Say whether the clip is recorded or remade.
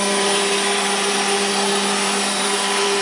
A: remade